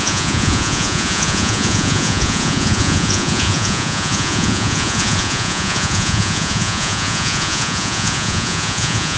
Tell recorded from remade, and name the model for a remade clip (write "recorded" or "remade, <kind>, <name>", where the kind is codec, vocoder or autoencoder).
remade, vocoder, Vocos